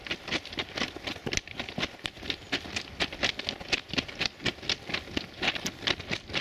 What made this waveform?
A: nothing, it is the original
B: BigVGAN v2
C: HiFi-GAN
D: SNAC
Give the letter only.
A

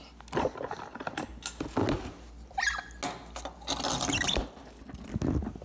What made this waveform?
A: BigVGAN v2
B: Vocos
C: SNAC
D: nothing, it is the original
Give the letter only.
D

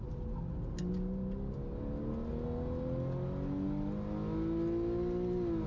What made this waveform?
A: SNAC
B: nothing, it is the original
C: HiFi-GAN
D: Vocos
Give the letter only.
B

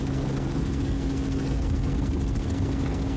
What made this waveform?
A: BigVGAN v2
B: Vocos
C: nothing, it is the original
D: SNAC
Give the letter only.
D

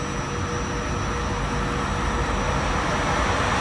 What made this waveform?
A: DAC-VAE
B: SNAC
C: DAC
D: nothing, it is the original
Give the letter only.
D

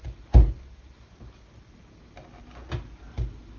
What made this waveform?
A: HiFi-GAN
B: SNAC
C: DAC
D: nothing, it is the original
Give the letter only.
D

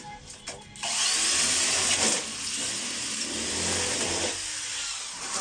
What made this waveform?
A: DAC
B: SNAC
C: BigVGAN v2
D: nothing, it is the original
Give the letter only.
D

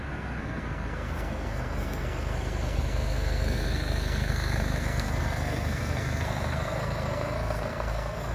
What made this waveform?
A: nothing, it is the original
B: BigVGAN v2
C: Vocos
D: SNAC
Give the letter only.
D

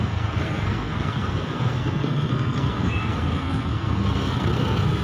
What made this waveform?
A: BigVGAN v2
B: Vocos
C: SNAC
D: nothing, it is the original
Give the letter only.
C